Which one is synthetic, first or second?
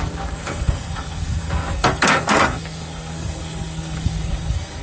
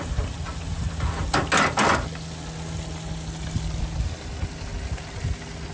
first